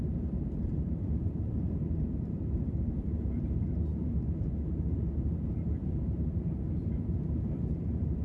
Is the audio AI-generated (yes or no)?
yes